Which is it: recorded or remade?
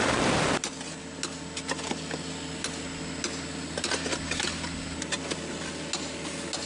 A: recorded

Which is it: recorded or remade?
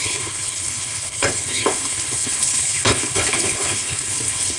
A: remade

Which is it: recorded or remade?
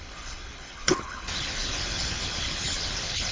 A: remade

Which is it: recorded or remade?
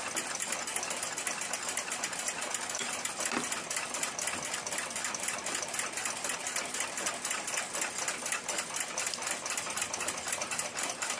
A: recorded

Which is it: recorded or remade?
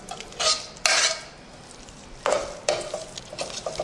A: recorded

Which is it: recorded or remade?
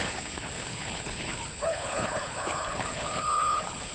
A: remade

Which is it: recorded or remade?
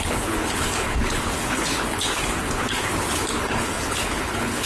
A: remade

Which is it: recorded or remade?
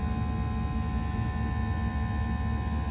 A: recorded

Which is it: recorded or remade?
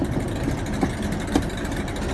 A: recorded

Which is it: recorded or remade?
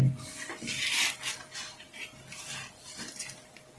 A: recorded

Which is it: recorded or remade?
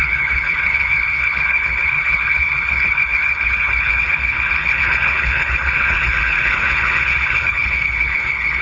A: remade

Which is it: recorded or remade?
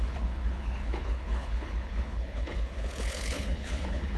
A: remade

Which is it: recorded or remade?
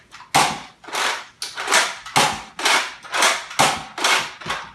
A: recorded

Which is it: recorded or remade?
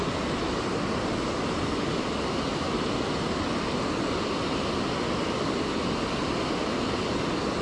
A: recorded